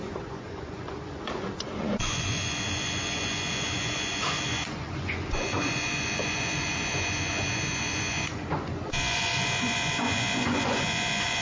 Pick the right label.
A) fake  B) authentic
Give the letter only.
A